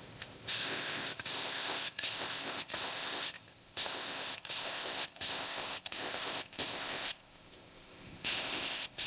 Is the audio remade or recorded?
remade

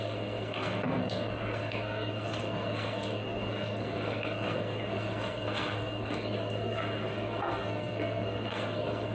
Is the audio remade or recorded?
remade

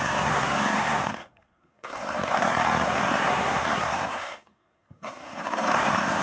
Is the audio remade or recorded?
remade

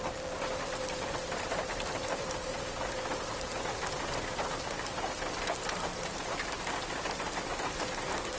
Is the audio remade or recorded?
recorded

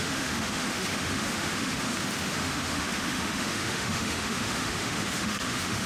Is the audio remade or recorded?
remade